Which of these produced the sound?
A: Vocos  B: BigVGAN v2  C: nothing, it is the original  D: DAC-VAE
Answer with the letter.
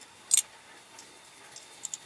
C